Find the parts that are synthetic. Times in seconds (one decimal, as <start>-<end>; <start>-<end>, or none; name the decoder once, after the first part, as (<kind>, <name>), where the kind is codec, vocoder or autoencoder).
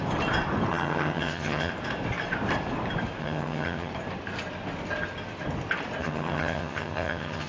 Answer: 0.7-1.7 (vocoder, HiFi-GAN); 3.2-3.9; 6.0-7.5